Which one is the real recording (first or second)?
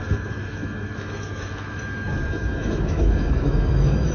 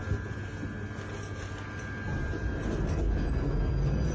second